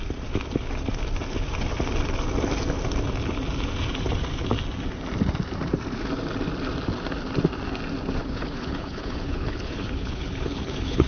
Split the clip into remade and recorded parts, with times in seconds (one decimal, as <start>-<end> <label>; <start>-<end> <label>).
0.0-8.2 recorded; 8.2-11.1 remade